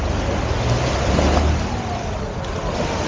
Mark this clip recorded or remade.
recorded